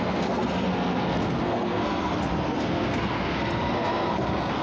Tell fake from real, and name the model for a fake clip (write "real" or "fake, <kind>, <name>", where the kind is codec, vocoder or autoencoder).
fake, codec, SNAC